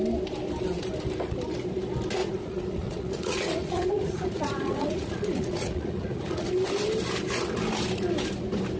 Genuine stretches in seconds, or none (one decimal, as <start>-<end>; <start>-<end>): 0.0-2.2; 6.5-8.8